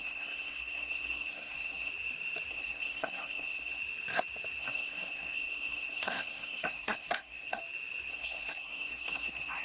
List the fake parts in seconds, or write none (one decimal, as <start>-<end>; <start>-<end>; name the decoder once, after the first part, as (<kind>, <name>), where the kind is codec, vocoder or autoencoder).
0.0-1.9 (codec, SNAC); 2.5-3.8; 4.6-7.6; 8.1-9.6